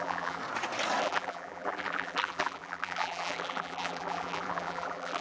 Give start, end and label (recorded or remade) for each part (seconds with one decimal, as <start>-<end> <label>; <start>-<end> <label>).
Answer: 0.0-0.4 remade; 0.4-1.0 recorded; 1.0-5.2 remade